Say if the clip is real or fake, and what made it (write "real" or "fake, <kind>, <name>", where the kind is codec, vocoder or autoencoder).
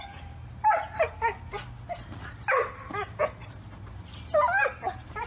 real